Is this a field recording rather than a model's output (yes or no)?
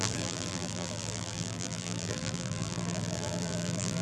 no